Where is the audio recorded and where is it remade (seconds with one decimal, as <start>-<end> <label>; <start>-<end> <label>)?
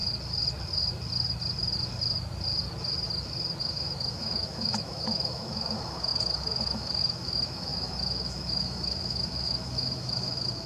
0.0-3.6 recorded; 3.6-10.7 remade